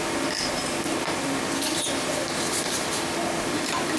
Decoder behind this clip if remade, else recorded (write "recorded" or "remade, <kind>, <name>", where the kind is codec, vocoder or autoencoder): recorded